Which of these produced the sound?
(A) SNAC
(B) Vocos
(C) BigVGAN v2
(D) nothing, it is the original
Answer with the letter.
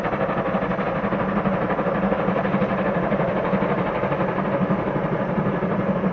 D